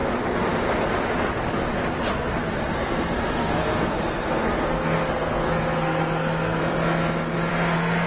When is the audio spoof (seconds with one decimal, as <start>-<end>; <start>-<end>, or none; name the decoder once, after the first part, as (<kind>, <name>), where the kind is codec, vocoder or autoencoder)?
2.1-6.6 (codec, SNAC); 7.5-8.1